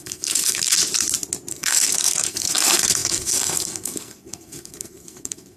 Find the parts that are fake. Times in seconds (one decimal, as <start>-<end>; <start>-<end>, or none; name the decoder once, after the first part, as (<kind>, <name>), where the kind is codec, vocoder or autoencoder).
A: 0.0-0.8 (codec, SNAC); 1.5-5.6